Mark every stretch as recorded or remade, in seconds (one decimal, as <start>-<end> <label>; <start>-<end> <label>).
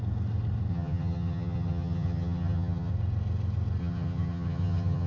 0.0-0.7 recorded; 0.7-2.9 remade; 2.9-3.8 recorded; 3.8-5.1 remade